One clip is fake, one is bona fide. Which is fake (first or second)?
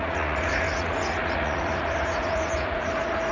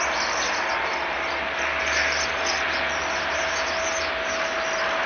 first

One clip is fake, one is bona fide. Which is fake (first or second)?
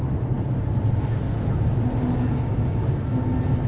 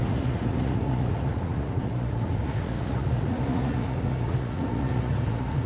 second